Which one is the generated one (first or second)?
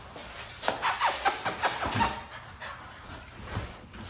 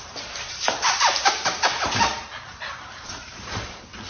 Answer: second